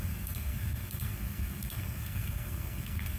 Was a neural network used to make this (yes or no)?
yes